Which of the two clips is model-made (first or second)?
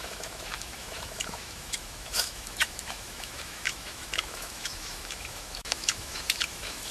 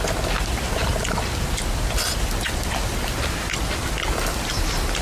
first